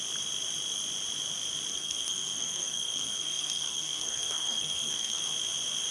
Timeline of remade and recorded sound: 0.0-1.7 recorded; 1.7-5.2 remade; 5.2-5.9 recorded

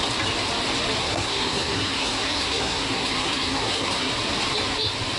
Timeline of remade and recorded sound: 0.0-1.0 recorded; 1.0-4.1 remade; 4.1-5.2 recorded

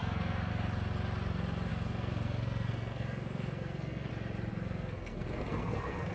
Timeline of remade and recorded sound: 0.0-0.5 remade; 0.5-1.7 recorded; 1.7-4.1 remade; 4.1-4.5 recorded; 4.5-6.1 remade